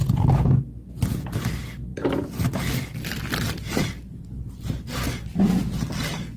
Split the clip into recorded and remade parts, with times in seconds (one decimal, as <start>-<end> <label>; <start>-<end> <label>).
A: 0.0-1.9 recorded; 1.9-5.7 remade; 5.7-6.4 recorded